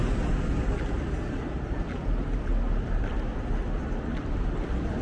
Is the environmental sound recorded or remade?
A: remade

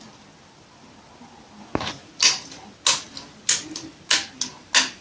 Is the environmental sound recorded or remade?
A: recorded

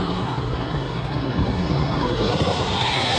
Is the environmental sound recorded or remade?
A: remade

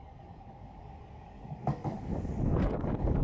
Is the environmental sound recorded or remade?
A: remade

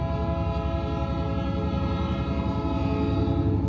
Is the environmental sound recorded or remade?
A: recorded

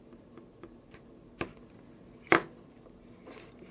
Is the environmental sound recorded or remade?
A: recorded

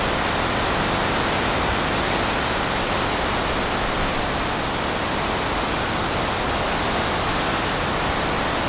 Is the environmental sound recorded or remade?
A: recorded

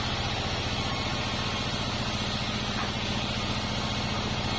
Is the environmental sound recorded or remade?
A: recorded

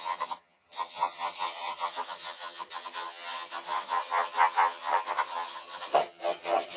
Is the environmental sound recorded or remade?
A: remade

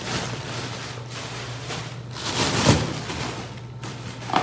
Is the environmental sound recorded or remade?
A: recorded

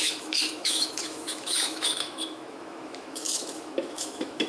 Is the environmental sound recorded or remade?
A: remade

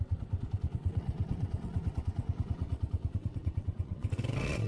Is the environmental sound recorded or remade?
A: remade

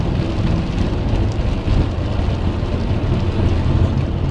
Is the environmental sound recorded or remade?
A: recorded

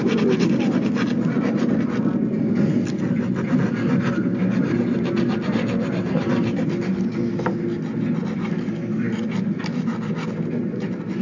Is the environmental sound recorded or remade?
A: recorded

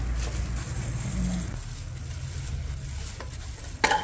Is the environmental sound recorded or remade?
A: recorded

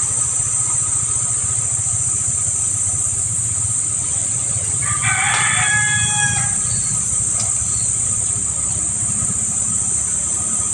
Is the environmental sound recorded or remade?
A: recorded